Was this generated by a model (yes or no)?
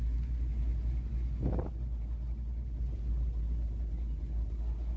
no